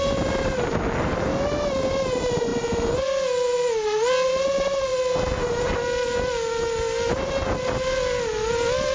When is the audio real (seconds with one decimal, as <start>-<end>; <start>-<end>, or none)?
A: 0.0-8.9